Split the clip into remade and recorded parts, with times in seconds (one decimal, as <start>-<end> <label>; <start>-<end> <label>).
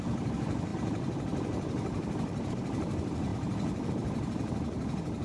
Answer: 0.0-5.2 recorded